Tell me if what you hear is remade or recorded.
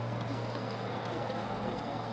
remade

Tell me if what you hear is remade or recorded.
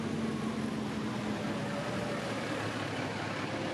recorded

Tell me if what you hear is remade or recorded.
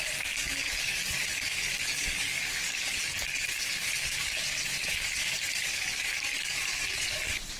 remade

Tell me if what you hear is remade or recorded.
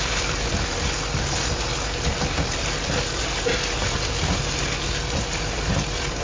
recorded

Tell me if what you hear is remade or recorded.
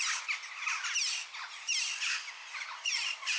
remade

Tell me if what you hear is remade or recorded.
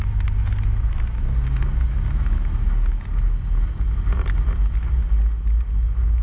recorded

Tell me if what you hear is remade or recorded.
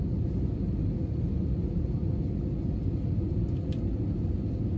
recorded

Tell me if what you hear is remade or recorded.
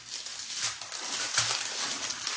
recorded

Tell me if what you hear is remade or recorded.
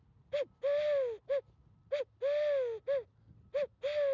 recorded